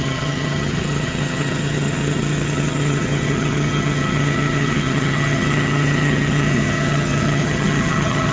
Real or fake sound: fake